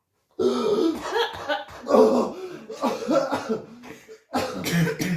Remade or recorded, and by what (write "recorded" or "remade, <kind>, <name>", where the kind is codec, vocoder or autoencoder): recorded